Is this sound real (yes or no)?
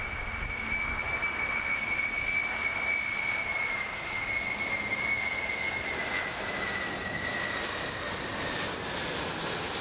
yes